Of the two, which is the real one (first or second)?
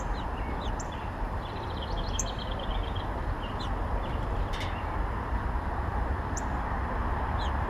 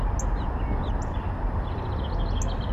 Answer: second